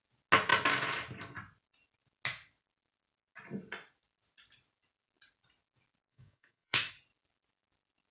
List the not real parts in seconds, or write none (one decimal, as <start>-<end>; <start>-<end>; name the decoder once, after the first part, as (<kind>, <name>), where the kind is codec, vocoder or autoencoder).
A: 6.1-6.9 (codec, DAC)